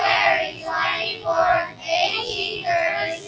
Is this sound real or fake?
fake